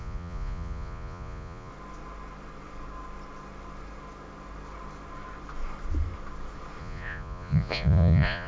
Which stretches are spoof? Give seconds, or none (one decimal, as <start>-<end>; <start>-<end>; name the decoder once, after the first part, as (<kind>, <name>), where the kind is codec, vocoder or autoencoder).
0.0-1.7 (vocoder, Vocos); 6.8-8.5